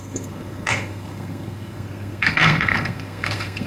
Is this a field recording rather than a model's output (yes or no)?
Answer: no